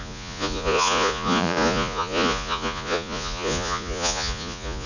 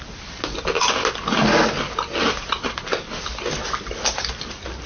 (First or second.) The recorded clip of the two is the second